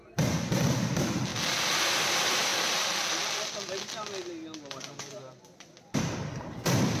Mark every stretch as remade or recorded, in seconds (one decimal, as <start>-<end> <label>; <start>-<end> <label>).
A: 0.0-7.0 recorded